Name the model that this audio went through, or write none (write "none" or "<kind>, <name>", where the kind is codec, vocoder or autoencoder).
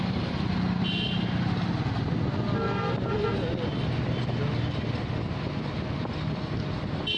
none